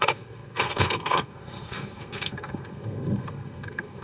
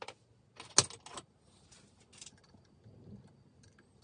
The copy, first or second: first